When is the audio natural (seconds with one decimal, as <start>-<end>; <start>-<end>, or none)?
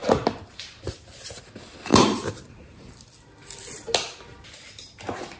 0.0-1.9; 2.9-5.4